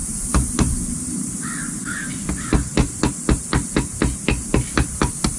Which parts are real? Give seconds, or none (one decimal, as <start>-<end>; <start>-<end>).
1.4-2.1